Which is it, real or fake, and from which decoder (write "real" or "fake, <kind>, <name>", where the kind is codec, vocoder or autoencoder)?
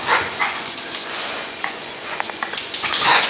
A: fake, vocoder, Vocos